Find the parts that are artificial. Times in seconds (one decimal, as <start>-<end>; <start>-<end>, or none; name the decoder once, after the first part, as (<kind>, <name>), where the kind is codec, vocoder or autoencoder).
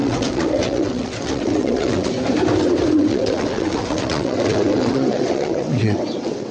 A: 0.0-2.1 (vocoder, WaveNeXt); 2.6-6.5